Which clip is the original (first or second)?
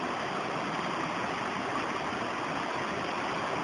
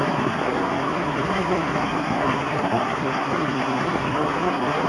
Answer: first